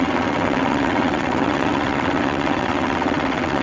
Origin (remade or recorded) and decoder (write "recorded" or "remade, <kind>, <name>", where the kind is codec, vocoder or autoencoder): remade, vocoder, WaveNeXt